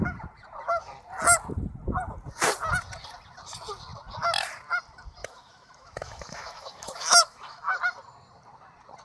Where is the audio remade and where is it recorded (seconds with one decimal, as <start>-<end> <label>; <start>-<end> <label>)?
0.0-5.2 recorded; 5.2-7.8 remade; 7.8-9.0 recorded